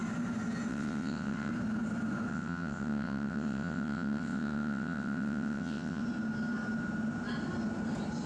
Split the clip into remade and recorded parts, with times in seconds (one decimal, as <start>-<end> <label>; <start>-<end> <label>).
0.0-0.7 recorded; 0.7-1.5 remade; 1.5-2.3 recorded; 2.3-6.0 remade; 6.0-8.3 recorded